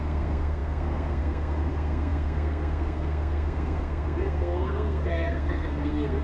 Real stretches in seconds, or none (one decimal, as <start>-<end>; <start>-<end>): none